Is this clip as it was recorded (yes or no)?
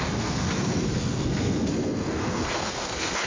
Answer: no